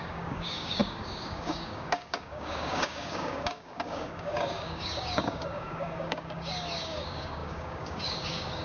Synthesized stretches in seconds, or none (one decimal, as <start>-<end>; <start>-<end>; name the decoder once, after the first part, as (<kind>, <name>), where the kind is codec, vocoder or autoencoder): 0.0-8.6 (codec, DAC)